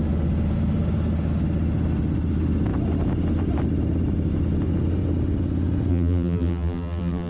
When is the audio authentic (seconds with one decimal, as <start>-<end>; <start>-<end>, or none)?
0.0-5.9